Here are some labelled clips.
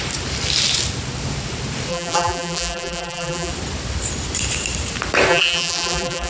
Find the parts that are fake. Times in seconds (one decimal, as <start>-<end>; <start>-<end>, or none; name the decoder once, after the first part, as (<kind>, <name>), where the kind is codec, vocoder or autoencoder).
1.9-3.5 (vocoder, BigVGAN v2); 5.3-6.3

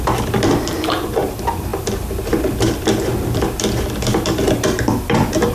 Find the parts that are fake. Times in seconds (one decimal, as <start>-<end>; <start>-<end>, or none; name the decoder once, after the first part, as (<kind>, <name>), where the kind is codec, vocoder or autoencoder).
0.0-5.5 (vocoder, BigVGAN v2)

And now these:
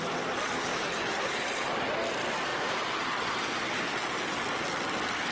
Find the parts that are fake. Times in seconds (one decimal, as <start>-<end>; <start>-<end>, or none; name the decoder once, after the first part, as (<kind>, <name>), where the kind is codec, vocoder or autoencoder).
none

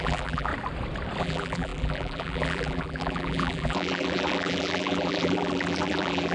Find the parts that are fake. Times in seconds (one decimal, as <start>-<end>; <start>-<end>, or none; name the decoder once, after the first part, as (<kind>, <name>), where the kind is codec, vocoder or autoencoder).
0.0-0.5 (vocoder, BigVGAN v2); 1.2-6.3

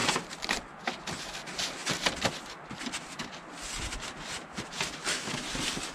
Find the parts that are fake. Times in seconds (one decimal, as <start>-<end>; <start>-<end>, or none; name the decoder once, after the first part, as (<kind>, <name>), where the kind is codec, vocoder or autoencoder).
none